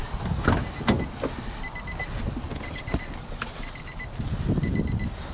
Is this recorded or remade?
recorded